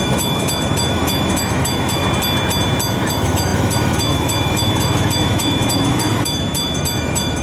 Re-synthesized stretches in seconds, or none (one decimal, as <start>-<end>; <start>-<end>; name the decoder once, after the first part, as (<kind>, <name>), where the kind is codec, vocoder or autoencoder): 0.0-2.0 (autoencoder, DAC-VAE); 3.1-7.4